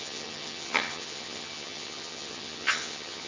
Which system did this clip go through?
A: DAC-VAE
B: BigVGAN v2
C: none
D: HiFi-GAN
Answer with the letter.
D